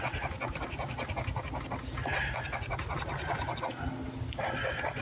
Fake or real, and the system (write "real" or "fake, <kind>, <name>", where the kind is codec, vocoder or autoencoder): real